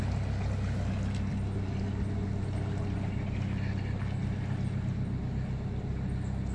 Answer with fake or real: real